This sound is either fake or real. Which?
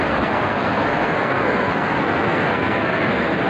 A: fake